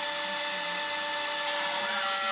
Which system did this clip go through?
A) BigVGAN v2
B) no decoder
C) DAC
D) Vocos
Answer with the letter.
B